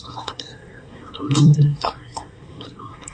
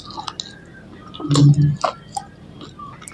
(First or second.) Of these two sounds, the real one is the second